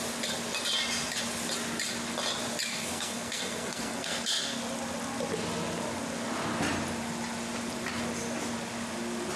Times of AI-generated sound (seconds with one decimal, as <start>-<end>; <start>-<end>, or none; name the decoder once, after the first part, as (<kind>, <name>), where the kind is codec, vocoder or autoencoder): 2.7-4.6 (codec, SNAC)